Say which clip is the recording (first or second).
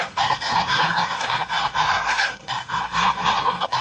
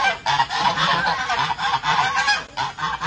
second